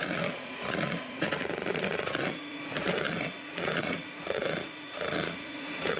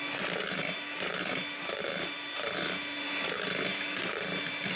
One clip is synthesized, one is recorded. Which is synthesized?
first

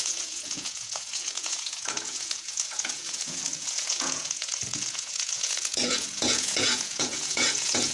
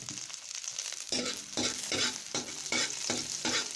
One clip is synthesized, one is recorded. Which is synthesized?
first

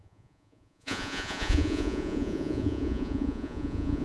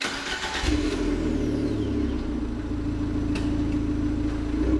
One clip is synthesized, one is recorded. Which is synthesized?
first